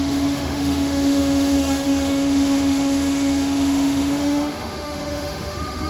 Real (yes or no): no